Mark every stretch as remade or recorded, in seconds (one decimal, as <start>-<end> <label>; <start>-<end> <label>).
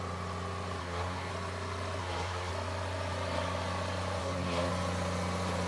0.0-0.8 recorded; 0.8-1.3 remade; 1.3-2.0 recorded; 2.0-2.5 remade; 2.5-4.2 recorded; 4.2-4.7 remade; 4.7-5.7 recorded